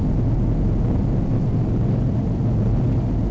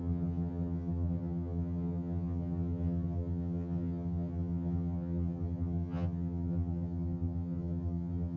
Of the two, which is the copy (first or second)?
second